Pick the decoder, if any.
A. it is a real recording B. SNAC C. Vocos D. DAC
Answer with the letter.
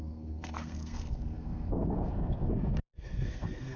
B